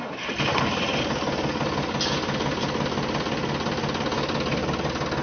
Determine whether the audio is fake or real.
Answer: real